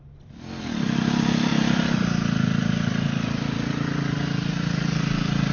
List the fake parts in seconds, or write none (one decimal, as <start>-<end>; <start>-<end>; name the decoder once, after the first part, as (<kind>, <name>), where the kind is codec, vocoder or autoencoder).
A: 1.5-2.0 (vocoder, BigVGAN v2)